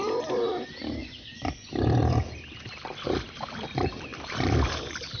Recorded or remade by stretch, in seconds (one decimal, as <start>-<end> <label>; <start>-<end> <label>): 0.0-1.0 recorded; 1.0-1.7 remade; 1.7-5.2 recorded